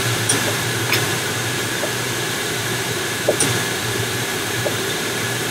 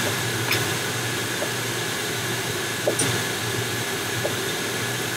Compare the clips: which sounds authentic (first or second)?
second